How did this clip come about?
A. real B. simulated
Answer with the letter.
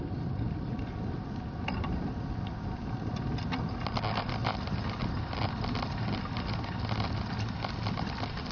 A